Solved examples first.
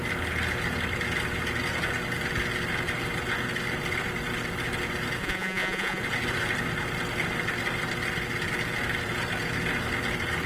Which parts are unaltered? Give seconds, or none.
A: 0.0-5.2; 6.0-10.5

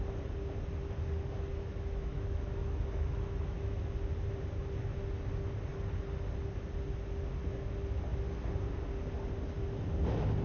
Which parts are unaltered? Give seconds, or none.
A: 0.0-1.5; 4.0-10.4

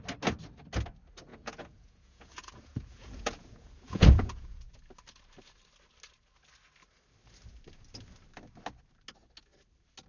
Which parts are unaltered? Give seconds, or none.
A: 0.0-1.3; 4.7-10.1

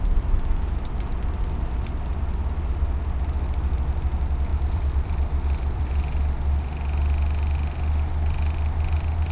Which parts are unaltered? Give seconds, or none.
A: 0.0-4.5; 5.8-9.3

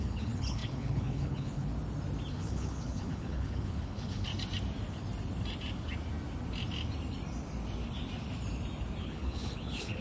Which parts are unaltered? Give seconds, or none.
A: 1.7-2.3; 4.3-9.0

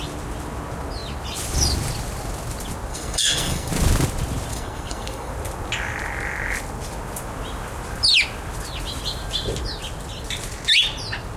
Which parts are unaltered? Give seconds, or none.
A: 0.0-2.9; 3.7-4.5; 5.3-11.4

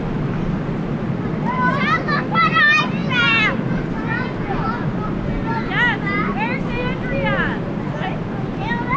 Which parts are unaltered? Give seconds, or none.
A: 0.0-9.0